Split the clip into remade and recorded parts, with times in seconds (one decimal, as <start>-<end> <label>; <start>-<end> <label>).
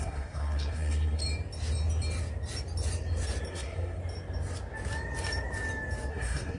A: 0.0-1.2 remade; 1.2-3.5 recorded; 3.5-4.0 remade; 4.0-6.1 recorded; 6.1-6.6 remade